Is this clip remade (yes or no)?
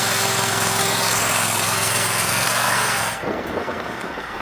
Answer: yes